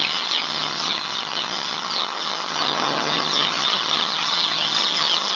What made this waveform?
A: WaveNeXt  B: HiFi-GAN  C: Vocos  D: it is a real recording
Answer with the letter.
B